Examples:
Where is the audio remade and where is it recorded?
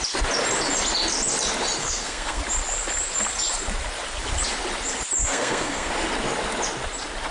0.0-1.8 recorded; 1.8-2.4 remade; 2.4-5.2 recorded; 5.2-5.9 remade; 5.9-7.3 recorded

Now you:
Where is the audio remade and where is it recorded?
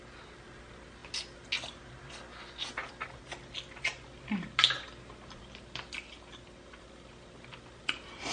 0.0-8.3 recorded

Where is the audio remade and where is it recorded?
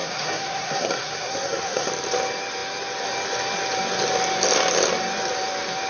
0.0-1.9 remade; 1.9-5.9 recorded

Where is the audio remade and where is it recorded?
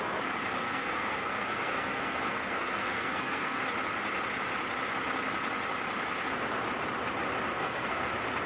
0.0-0.6 recorded; 0.6-3.6 remade; 3.6-7.5 recorded; 7.5-8.1 remade; 8.1-8.5 recorded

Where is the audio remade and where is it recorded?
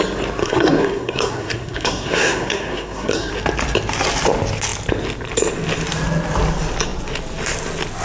0.0-0.4 recorded; 0.4-3.3 remade; 3.3-8.0 recorded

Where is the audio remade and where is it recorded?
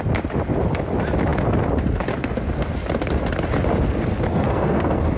0.0-4.3 recorded; 4.3-5.2 remade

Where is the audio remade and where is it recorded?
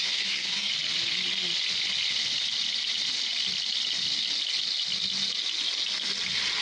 0.0-0.7 remade; 0.7-6.6 recorded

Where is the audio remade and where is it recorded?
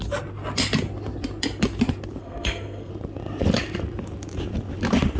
0.0-2.2 recorded; 2.2-2.9 remade; 2.9-5.2 recorded